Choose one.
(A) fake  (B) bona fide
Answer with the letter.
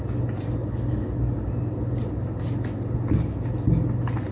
B